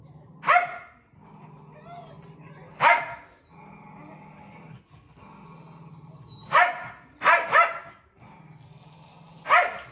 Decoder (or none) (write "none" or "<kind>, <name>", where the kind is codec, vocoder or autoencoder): none